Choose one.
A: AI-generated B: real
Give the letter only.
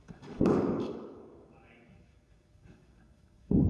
A